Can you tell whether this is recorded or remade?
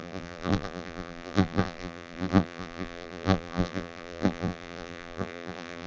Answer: remade